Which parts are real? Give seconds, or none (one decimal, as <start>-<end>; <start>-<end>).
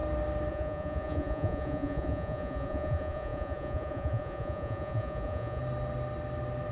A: 0.0-0.5; 5.6-6.7